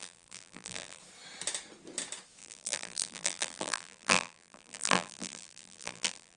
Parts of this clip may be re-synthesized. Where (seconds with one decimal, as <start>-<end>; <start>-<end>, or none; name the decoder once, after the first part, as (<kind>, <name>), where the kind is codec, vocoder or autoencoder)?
0.0-1.0 (vocoder, BigVGAN v2); 2.4-6.4